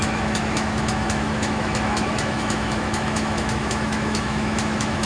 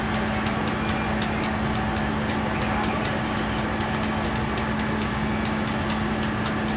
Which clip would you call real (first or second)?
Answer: second